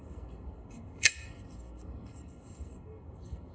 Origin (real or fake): fake